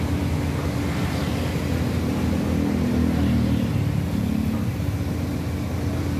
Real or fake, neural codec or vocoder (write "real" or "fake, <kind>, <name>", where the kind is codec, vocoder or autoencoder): real